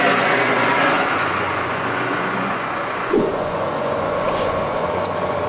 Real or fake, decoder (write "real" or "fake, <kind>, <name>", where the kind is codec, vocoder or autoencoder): fake, vocoder, Vocos